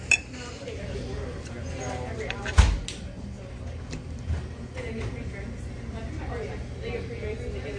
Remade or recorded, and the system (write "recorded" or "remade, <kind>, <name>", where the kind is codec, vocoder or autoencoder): recorded